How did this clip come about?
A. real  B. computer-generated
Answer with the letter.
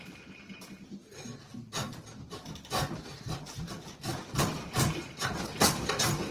B